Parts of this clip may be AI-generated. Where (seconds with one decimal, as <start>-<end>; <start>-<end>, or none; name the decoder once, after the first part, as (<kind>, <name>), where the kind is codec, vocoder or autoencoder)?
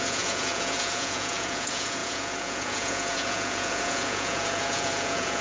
0.0-5.4 (vocoder, Vocos)